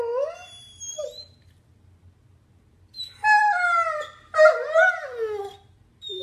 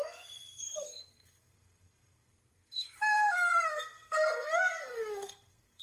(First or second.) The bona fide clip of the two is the first